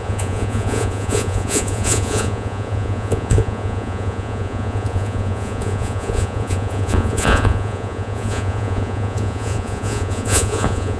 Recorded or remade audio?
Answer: remade